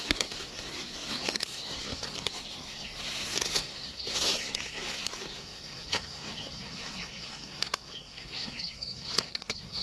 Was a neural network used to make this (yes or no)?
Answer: yes